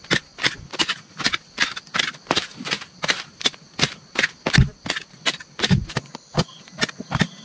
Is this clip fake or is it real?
real